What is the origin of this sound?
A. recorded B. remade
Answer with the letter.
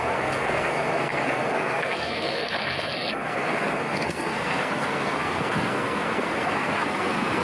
B